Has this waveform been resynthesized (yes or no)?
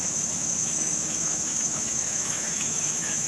yes